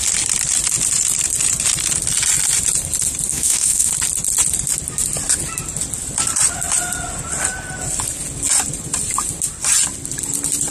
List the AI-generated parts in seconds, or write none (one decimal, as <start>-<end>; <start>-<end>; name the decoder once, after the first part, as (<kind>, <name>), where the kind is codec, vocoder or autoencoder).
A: 3.3-3.9 (autoencoder, DAC-VAE)